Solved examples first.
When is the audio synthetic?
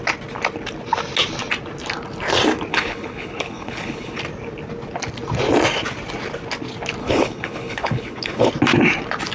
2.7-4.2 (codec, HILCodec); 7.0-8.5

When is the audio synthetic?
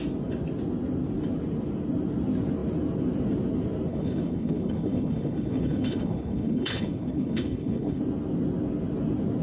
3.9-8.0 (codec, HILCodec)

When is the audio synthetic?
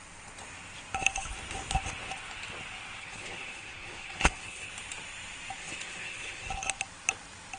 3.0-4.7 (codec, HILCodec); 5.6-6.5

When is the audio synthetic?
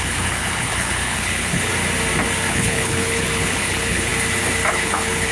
0.0-1.7 (codec, HILCodec); 2.5-4.1; 4.7-5.3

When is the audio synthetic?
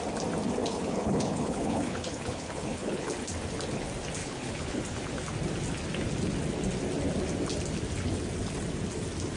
0.6-3.1 (codec, HILCodec); 4.2-4.8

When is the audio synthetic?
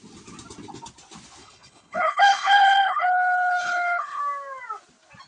1.4-4.2 (codec, HILCodec)